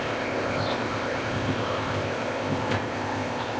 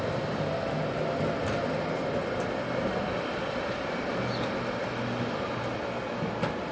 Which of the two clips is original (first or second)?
second